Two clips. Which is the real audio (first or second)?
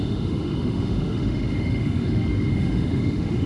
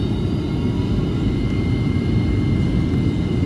second